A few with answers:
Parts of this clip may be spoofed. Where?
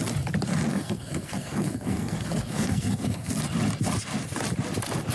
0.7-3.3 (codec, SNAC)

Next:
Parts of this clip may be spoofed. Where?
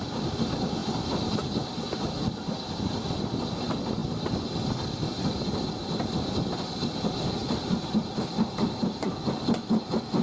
0.0-10.2 (vocoder, BigVGAN v2)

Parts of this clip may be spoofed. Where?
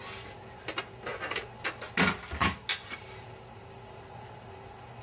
none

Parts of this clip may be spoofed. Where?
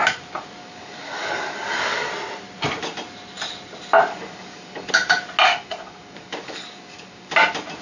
0.6-2.1 (codec, DAC); 4.1-4.9; 5.5-7.3